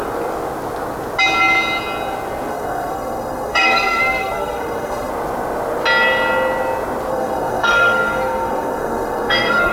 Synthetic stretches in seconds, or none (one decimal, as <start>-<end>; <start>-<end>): 2.5-5.1; 7.1-9.7